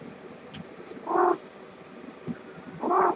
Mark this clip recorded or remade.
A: recorded